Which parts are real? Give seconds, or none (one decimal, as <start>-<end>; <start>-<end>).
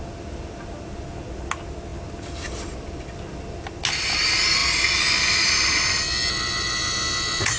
0.0-7.6